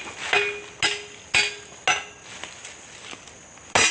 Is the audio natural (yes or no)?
yes